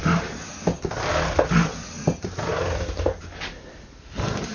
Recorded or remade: remade